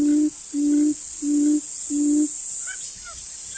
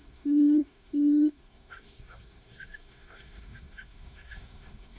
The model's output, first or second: second